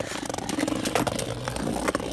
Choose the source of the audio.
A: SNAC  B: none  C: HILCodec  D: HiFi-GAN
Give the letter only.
B